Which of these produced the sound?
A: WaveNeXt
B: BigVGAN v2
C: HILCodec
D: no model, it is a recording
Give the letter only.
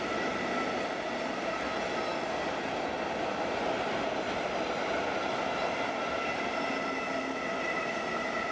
D